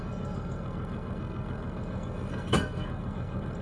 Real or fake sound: fake